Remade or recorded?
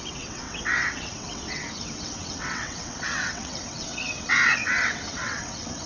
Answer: remade